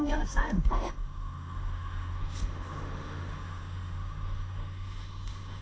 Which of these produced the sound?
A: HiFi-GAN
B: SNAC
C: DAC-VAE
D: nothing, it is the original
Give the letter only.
C